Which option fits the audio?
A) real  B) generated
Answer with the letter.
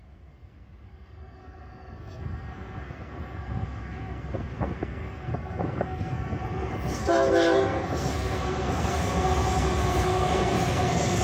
B